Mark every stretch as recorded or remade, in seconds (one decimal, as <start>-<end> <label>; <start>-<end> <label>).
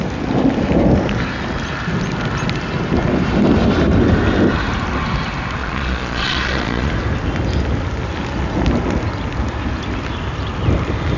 0.0-5.6 recorded; 5.6-6.9 remade; 6.9-11.2 recorded